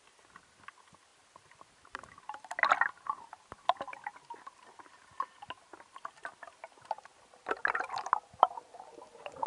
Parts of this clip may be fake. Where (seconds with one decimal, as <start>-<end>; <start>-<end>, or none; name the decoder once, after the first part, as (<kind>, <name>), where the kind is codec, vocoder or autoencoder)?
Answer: none